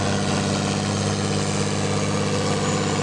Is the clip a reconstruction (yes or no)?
no